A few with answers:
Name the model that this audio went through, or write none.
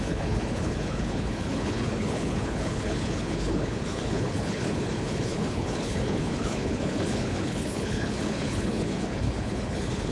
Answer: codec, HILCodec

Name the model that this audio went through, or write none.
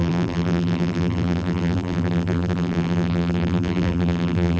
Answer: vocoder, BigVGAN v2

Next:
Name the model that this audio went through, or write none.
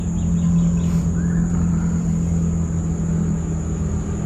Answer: none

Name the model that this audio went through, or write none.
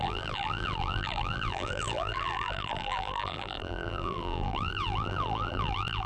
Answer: vocoder, BigVGAN v2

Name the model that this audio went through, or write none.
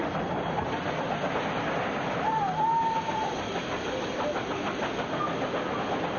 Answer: none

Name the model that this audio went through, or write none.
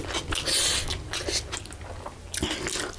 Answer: none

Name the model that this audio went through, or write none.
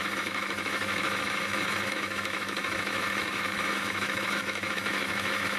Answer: autoencoder, DAC-VAE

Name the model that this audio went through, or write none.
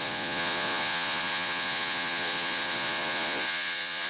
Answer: vocoder, Vocos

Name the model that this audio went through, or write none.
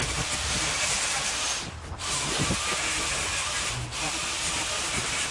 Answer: vocoder, BigVGAN v2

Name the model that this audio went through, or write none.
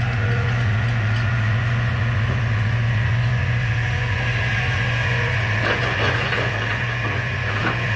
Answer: vocoder, Vocos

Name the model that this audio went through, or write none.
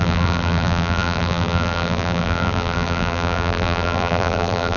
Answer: vocoder, BigVGAN v2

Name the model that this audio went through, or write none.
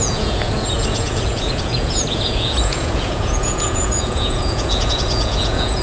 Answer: vocoder, Vocos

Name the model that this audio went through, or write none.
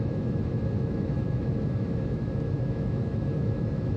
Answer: autoencoder, DAC-VAE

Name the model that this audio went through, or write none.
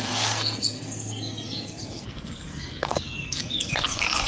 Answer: codec, SNAC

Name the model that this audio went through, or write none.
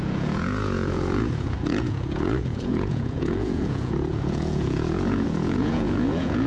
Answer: vocoder, Vocos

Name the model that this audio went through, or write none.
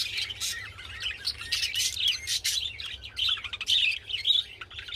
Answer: none